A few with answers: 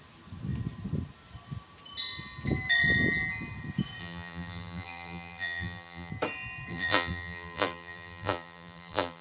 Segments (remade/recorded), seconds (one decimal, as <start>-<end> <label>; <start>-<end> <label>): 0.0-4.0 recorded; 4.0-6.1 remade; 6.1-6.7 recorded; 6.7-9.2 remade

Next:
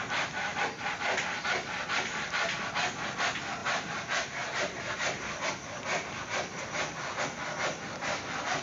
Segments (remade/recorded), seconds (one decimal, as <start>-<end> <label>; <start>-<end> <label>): 0.0-0.5 recorded; 0.5-2.6 remade; 2.6-3.6 recorded; 3.6-7.2 remade; 7.2-8.6 recorded

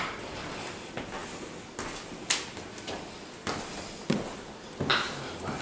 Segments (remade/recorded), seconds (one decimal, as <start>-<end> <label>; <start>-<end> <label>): 0.0-4.9 recorded; 4.9-5.6 remade